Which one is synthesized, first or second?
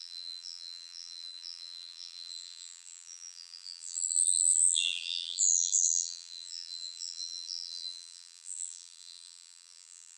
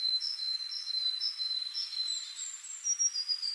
first